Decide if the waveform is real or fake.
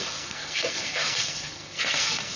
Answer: fake